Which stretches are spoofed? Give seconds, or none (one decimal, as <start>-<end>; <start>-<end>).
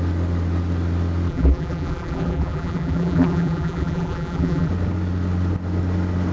1.3-4.7